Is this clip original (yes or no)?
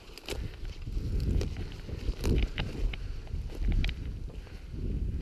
yes